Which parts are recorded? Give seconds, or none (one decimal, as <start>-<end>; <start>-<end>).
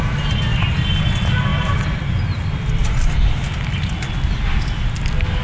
0.0-1.5; 2.2-2.8; 3.6-5.4